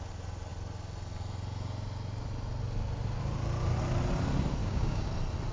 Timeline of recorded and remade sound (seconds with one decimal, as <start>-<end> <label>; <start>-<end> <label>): 0.0-4.6 recorded; 4.6-5.1 remade; 5.1-5.5 recorded